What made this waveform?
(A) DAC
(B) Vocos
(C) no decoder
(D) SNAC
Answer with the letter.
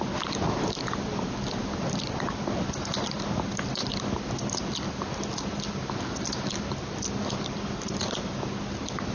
C